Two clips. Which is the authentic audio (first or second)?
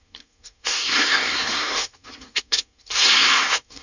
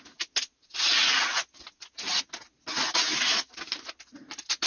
second